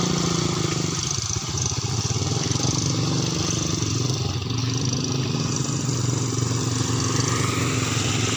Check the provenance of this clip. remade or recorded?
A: recorded